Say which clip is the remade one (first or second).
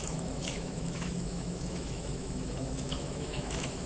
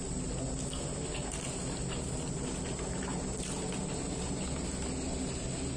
first